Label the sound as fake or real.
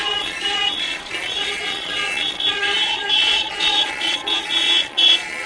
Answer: fake